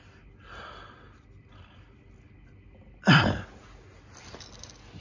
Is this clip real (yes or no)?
yes